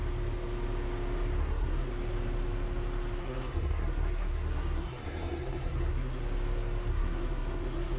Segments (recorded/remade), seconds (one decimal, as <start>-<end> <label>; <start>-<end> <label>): 0.0-1.4 recorded; 1.4-1.9 remade; 1.9-3.2 recorded; 3.2-6.2 remade; 6.2-6.9 recorded; 6.9-8.0 remade